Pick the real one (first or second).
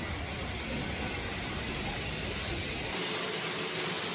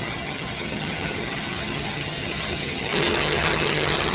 first